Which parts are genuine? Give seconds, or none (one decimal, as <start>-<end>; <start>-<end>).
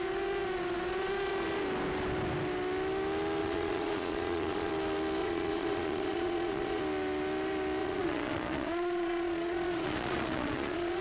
0.0-3.4; 4.7-5.2; 6.8-7.8